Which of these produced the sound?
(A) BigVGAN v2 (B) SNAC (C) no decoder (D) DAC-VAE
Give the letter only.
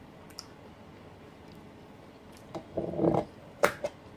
C